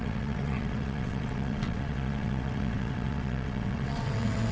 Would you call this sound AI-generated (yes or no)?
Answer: yes